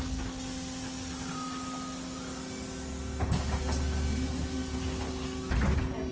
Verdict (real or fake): real